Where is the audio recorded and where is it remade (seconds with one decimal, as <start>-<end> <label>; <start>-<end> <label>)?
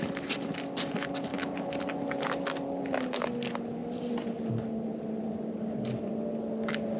0.0-7.0 recorded